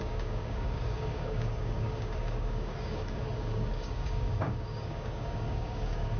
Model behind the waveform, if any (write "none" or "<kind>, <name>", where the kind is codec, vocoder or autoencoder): codec, DAC